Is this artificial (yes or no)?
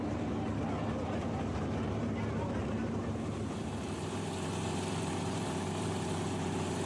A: yes